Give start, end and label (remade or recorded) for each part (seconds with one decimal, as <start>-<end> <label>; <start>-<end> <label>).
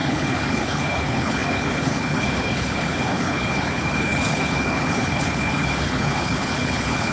0.0-7.1 remade